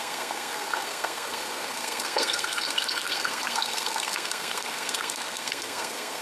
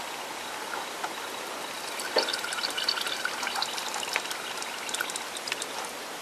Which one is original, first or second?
second